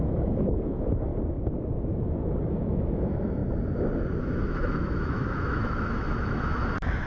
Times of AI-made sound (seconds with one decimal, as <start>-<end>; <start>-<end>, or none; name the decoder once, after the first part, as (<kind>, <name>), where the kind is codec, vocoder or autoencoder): 0.0-1.1 (autoencoder, DAC-VAE); 2.5-3.4; 4.2-7.1